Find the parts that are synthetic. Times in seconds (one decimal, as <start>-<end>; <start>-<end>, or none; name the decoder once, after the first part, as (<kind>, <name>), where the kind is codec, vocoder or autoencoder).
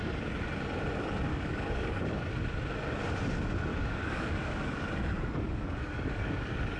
1.3-2.3 (codec, DAC); 3.7-6.8